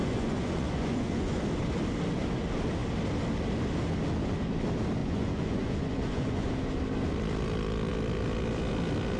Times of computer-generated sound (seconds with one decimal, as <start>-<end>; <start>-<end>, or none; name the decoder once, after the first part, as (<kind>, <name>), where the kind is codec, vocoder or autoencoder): 0.0-1.4 (vocoder, Vocos); 5.0-6.5